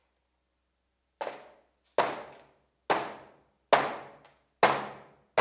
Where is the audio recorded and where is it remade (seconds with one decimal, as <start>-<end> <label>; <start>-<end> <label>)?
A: 0.0-5.4 recorded